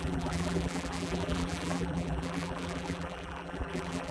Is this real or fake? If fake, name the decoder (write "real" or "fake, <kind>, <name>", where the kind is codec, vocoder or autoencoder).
fake, vocoder, BigVGAN v2